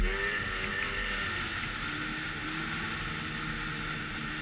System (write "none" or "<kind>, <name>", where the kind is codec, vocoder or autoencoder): none